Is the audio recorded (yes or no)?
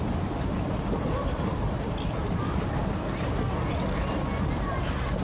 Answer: no